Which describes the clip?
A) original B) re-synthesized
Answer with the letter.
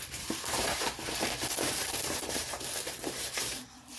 B